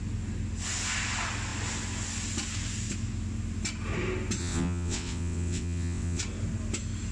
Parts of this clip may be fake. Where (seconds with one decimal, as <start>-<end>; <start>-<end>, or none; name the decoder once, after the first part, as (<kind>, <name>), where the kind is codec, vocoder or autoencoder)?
4.4-6.2 (vocoder, WaveNeXt)